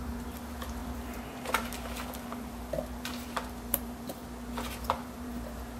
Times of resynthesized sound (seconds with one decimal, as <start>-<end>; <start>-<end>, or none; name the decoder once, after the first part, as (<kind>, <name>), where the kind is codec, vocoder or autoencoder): 0.0-4.2 (vocoder, BigVGAN v2); 4.7-5.8